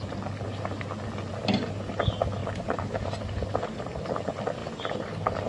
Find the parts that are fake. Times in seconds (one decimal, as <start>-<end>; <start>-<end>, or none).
1.3-1.9; 2.4-3.8; 4.6-5.5